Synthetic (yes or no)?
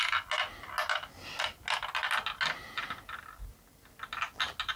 no